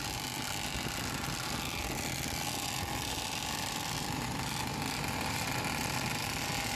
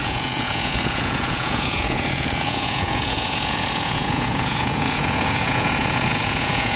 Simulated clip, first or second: second